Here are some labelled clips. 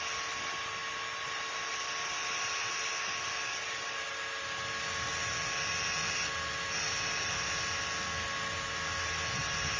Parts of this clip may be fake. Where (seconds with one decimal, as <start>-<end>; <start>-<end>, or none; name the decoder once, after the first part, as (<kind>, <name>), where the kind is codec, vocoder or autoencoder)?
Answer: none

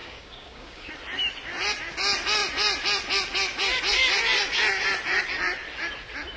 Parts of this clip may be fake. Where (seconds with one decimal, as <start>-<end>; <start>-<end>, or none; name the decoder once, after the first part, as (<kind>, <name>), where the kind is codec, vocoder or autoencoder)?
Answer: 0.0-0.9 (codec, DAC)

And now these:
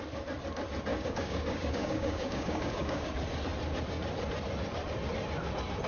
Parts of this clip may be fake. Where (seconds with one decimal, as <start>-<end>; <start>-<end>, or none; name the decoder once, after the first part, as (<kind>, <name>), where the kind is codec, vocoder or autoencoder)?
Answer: 0.9-3.1 (codec, DAC)

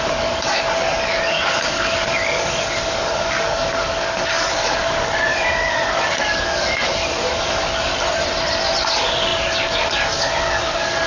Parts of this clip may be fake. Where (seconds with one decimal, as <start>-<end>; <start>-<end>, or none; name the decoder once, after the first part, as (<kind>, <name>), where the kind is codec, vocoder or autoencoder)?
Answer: 0.0-7.9 (codec, DAC); 8.8-11.1

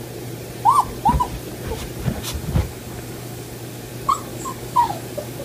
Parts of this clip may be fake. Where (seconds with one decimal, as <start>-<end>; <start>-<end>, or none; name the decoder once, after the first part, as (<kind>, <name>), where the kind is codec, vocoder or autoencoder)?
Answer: 2.6-3.9 (codec, DAC); 4.3-5.4

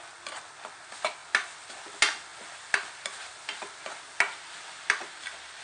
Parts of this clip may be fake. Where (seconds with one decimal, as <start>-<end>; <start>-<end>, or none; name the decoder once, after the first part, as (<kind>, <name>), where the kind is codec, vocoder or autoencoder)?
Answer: none

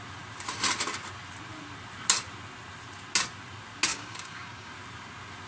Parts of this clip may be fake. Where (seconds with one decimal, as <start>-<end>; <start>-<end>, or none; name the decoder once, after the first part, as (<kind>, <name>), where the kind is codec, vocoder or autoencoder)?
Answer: 3.9-4.7 (codec, DAC)

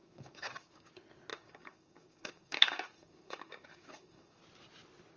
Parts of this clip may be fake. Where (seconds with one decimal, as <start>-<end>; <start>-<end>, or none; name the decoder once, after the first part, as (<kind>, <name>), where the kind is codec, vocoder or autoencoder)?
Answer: 0.0-0.9 (codec, DAC); 1.3-4.4